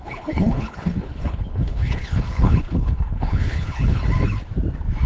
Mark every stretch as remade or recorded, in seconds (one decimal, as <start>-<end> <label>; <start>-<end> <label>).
0.0-4.0 remade; 4.0-5.1 recorded